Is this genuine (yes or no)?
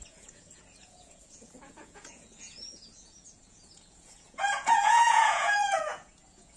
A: no